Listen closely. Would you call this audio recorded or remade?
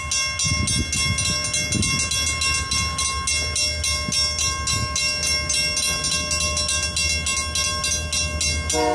recorded